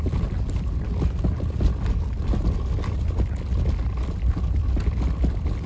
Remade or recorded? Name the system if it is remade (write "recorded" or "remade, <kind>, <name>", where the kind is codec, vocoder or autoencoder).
recorded